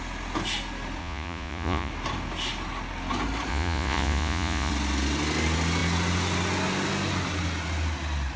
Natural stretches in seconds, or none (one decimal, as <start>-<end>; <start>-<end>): 0.0-1.0; 1.9-3.5; 4.7-8.4